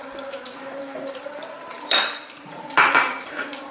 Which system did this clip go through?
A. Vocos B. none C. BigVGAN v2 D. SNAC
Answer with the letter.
C